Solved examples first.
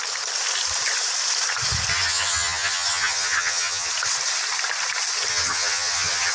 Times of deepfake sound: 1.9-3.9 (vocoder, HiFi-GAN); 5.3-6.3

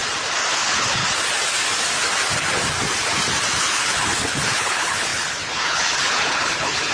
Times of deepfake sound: 0.5-1.0 (codec, HILCodec); 3.6-6.9

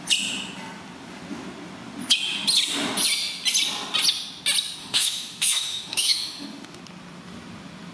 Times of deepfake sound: 4.8-6.8 (autoencoder, DAC-VAE)

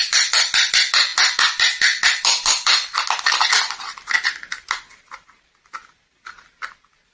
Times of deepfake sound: none

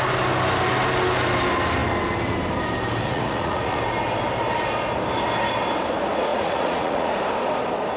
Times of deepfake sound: 3.0-3.8 (vocoder, Vocos); 6.3-7.2

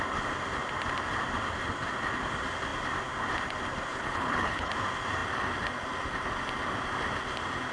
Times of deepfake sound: 3.9-4.7 (codec, HILCodec)